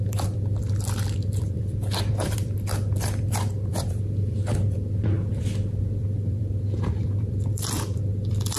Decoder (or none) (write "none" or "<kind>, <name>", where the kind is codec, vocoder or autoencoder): vocoder, BigVGAN v2